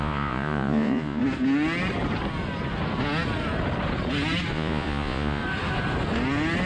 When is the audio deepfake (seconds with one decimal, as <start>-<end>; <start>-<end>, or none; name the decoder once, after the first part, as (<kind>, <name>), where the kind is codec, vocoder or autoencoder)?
0.0-1.2 (vocoder, Vocos); 4.5-5.4